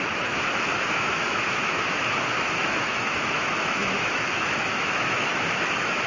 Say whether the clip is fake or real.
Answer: fake